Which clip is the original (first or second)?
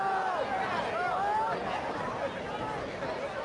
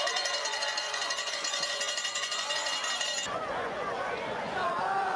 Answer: first